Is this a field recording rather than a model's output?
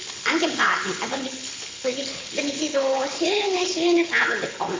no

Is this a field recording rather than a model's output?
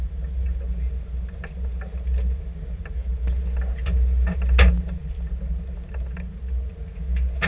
yes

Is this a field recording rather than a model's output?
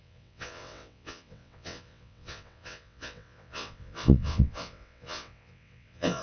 no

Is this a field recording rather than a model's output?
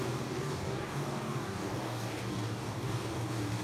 no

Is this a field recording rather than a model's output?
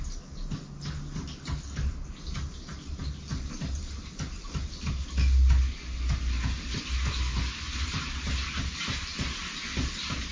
yes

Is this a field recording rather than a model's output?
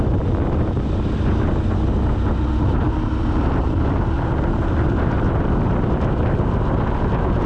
yes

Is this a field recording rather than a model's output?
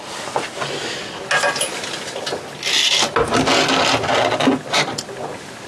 yes